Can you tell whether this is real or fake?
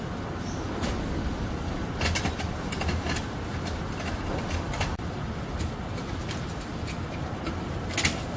real